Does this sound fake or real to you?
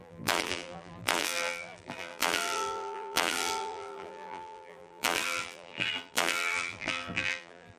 fake